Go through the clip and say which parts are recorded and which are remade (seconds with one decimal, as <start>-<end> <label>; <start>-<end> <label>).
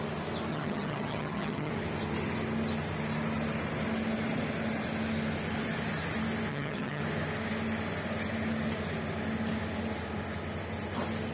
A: 0.0-0.5 recorded; 0.5-1.7 remade; 1.7-6.5 recorded; 6.5-7.0 remade; 7.0-11.3 recorded